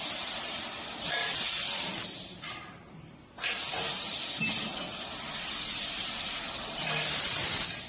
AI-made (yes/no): yes